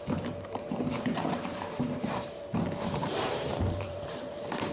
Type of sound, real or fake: fake